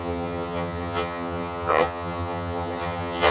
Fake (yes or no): yes